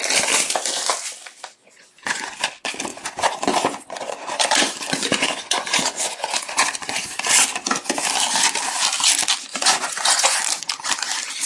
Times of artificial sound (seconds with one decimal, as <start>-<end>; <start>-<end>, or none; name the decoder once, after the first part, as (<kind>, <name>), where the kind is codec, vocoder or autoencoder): 1.6-2.4 (vocoder, Vocos); 2.9-7.2; 9.5-10.4